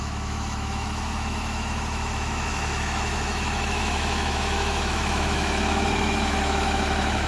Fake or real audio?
fake